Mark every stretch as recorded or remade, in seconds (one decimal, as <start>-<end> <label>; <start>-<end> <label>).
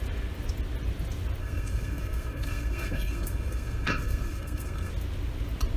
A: 0.0-1.4 recorded; 1.4-4.9 remade; 4.9-5.8 recorded